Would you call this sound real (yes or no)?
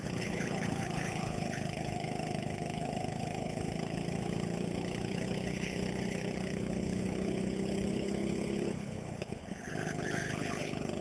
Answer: no